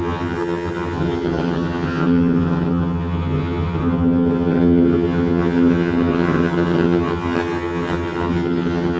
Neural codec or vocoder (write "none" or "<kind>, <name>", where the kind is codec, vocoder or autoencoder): vocoder, HiFi-GAN